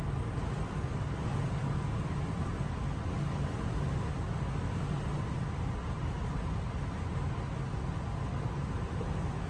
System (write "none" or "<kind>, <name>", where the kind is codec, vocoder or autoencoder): none